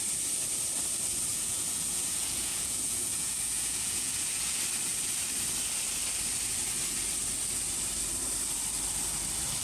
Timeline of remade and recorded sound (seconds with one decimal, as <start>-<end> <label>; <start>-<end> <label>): 0.0-1.3 recorded; 1.3-4.6 remade; 4.6-9.6 recorded